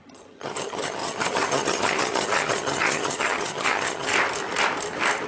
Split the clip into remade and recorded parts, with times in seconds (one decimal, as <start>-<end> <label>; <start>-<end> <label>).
0.0-4.1 remade; 4.1-5.3 recorded